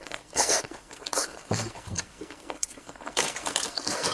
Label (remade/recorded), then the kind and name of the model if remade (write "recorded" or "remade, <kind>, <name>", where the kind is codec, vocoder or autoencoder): remade, codec, SNAC